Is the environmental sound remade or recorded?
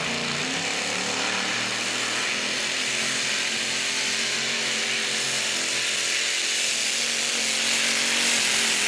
recorded